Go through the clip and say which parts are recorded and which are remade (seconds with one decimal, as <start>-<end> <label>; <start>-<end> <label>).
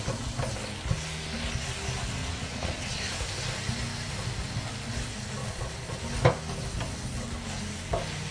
0.0-2.2 recorded; 2.2-3.1 remade; 3.1-5.4 recorded; 5.4-6.0 remade; 6.0-8.3 recorded